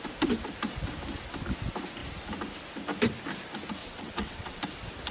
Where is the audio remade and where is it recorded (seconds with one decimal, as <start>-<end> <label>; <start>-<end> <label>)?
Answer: 0.0-3.8 recorded; 3.8-4.6 remade; 4.6-5.1 recorded